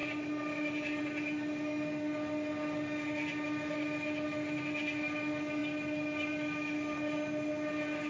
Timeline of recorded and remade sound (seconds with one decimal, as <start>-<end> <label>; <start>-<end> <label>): 0.0-8.1 recorded